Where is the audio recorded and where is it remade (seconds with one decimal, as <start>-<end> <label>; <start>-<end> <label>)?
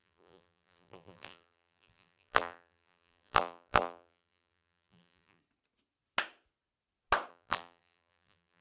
0.0-5.4 remade; 5.4-7.3 recorded; 7.3-8.6 remade